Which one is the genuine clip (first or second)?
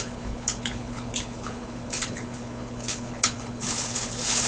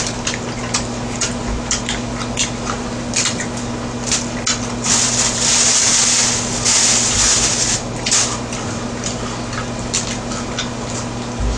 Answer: second